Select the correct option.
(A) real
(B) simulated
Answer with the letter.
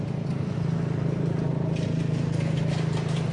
A